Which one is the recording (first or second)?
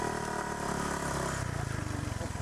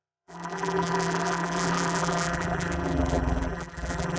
first